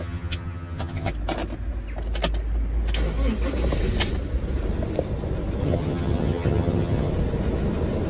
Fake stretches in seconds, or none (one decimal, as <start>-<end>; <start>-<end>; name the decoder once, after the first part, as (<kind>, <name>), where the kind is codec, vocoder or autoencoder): 0.0-1.1 (vocoder, HiFi-GAN); 5.6-7.1